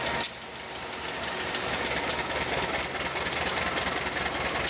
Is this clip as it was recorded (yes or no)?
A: yes